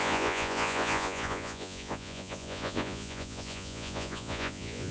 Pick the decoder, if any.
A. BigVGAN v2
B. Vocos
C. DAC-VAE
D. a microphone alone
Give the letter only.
B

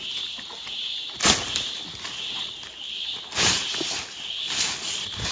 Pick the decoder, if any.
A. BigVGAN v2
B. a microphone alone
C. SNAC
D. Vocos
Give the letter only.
B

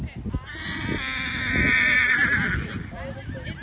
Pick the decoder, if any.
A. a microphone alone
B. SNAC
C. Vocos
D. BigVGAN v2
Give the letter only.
A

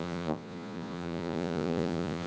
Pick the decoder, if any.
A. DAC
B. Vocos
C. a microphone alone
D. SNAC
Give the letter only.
B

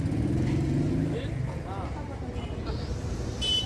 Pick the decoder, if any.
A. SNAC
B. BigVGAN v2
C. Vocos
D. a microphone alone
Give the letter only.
D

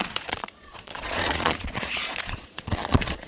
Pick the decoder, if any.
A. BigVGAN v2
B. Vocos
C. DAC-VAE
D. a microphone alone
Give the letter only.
B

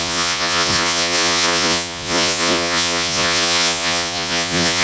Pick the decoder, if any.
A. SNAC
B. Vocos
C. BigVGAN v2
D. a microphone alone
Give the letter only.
B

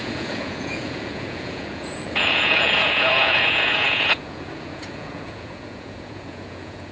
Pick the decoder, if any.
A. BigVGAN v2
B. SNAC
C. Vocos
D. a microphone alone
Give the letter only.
C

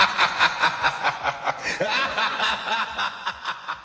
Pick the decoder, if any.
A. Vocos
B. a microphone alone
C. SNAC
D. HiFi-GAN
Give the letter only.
A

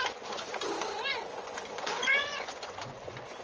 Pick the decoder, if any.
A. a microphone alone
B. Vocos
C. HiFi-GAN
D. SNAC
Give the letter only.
B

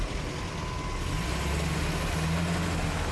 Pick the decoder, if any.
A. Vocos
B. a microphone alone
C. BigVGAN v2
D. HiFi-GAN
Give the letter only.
B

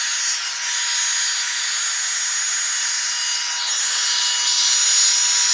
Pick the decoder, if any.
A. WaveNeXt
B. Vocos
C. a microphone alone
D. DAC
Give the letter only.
C